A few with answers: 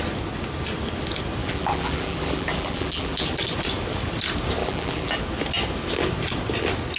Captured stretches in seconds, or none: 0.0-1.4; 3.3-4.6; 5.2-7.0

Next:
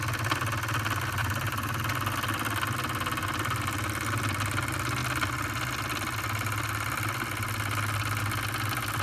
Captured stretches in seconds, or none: 0.0-1.2; 1.8-9.0